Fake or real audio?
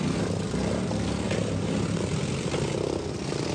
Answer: real